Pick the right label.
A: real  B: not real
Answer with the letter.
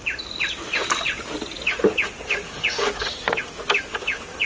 A